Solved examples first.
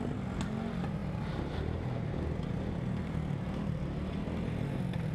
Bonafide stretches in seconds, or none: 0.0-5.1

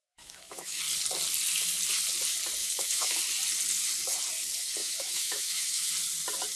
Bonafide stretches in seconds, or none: 0.8-2.6; 3.2-4.8; 5.9-6.6